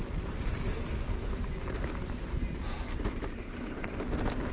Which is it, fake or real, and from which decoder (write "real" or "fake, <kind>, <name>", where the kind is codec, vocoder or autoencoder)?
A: real